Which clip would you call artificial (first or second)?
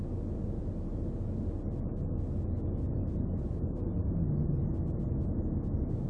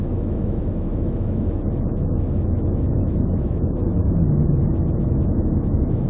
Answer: second